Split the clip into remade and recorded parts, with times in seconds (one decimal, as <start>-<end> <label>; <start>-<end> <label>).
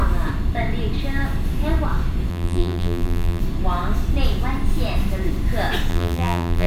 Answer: 0.0-2.3 recorded; 2.3-3.4 remade; 3.4-5.9 recorded; 5.9-6.7 remade